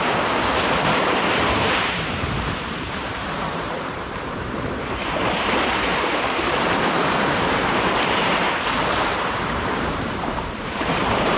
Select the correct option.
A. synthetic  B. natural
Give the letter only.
A